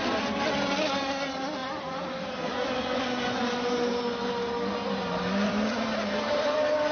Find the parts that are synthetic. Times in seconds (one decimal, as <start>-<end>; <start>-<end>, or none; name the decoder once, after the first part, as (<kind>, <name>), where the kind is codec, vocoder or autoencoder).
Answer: none